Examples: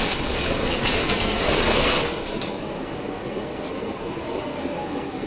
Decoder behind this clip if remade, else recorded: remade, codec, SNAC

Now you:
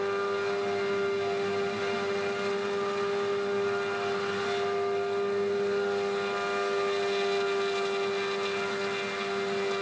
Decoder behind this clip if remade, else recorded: recorded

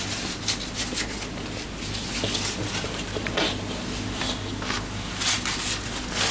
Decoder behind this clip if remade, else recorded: recorded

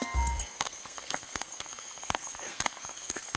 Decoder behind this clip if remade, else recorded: remade, codec, SNAC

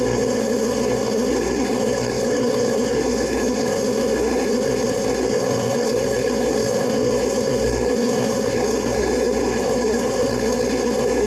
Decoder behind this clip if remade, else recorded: remade, codec, SNAC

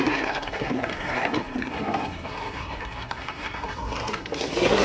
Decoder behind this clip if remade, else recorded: remade, codec, SNAC